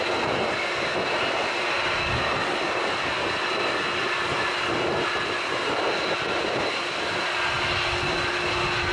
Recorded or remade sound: recorded